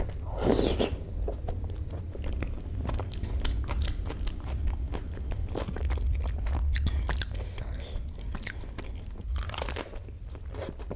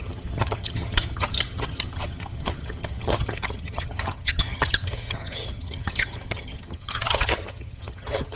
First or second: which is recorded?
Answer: first